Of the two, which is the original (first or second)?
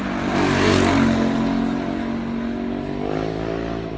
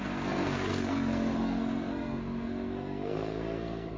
first